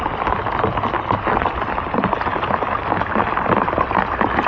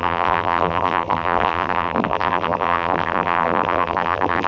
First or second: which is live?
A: first